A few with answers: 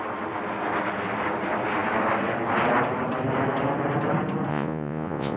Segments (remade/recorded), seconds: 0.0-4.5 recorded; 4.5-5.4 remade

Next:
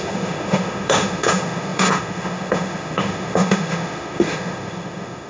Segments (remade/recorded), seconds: 0.0-5.3 remade

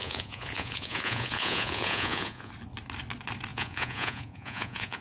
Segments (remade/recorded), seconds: 0.0-2.5 remade; 2.5-3.5 recorded; 3.5-5.0 remade